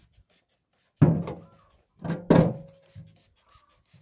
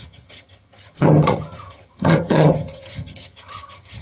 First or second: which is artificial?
second